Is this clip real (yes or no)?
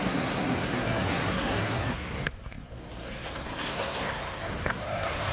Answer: no